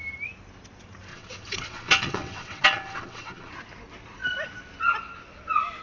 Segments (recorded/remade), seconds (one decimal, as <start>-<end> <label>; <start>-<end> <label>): 0.0-1.1 recorded; 1.1-3.5 remade; 3.5-5.8 recorded